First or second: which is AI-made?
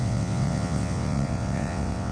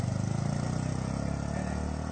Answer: first